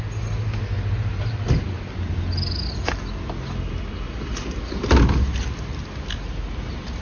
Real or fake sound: real